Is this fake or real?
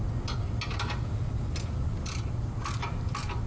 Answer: real